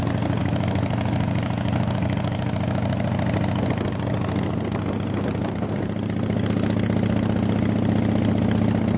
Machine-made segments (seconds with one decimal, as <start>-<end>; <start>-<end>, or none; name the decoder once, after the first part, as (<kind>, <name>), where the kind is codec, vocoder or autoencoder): 0.4-2.5 (codec, DAC)